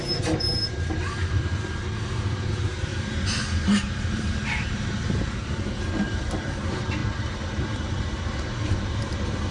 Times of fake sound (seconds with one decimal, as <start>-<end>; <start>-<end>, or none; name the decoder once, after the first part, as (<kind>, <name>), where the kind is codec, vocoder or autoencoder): 0.0-9.5 (vocoder, BigVGAN v2)